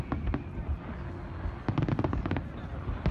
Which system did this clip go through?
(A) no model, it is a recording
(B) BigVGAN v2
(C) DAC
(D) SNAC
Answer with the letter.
A